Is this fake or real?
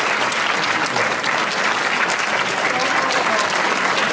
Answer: real